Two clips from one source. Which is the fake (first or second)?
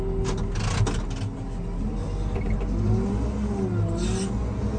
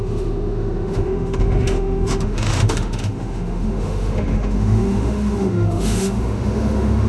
second